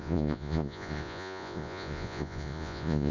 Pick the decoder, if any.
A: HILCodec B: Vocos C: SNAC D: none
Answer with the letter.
B